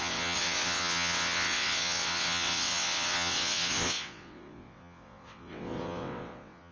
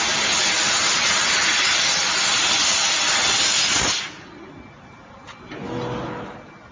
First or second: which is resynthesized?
first